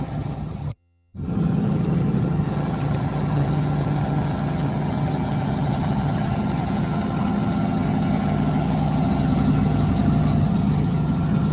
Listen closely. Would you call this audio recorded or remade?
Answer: remade